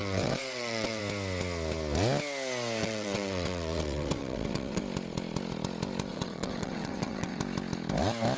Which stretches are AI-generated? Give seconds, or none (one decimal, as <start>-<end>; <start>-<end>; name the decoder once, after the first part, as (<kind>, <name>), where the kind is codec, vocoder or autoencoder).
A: 0.0-1.0 (vocoder, WaveNeXt); 2.8-4.8; 6.1-7.4